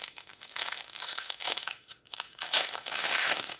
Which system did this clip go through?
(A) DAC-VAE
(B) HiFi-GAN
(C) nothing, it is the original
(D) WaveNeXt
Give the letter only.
A